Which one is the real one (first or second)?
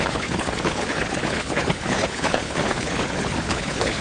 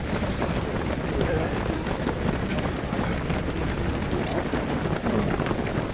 second